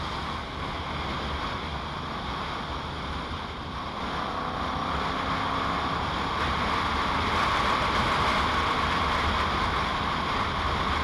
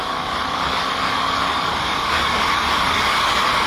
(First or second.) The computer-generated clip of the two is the second